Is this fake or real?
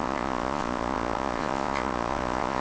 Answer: fake